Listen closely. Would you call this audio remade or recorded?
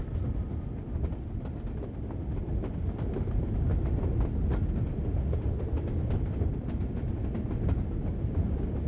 recorded